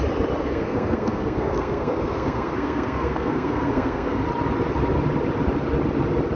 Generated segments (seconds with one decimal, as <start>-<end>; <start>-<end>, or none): 0.4-4.2